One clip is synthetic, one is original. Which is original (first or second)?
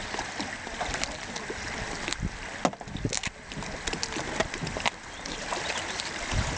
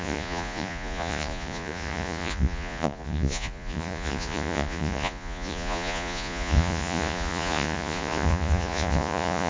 first